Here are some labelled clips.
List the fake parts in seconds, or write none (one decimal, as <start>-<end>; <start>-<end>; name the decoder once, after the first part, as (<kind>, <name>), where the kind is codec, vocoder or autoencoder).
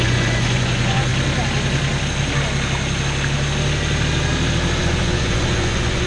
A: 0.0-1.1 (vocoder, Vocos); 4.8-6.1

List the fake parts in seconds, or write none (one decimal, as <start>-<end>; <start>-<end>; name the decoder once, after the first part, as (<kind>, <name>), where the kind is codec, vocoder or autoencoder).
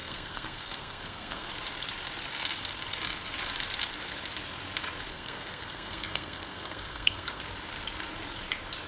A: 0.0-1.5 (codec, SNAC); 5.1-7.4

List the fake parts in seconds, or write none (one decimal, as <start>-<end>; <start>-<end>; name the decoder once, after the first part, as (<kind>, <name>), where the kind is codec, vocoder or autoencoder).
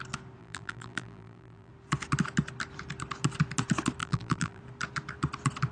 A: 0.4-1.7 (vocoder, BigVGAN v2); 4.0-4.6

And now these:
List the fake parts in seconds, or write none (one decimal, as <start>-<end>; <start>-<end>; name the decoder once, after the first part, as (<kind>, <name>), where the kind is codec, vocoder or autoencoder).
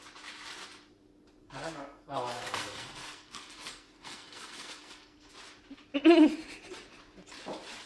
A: 1.4-5.3 (codec, SNAC)